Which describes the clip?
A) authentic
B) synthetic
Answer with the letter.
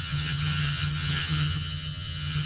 B